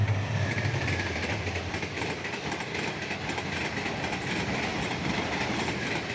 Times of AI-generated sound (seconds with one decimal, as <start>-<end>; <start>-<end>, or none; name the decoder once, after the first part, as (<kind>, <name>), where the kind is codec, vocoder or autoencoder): 0.0-4.7 (vocoder, BigVGAN v2)